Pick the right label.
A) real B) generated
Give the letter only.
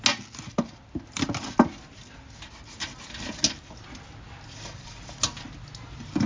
A